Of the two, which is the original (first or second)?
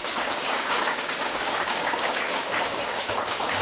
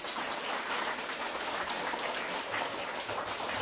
second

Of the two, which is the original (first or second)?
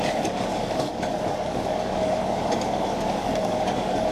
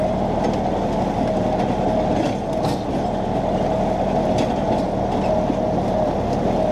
second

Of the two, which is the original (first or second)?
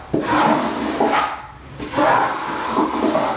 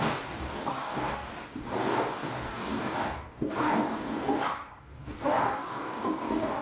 first